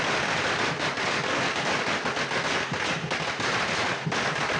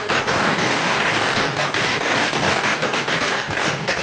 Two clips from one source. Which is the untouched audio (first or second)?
first